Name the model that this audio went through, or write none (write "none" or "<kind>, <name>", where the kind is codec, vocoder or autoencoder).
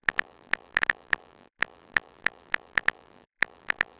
vocoder, BigVGAN v2